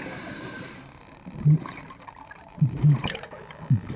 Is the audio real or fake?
fake